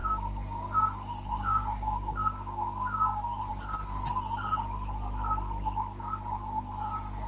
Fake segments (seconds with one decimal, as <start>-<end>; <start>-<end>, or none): 0.0-3.5